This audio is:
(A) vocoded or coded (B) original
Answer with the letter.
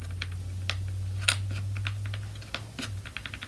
B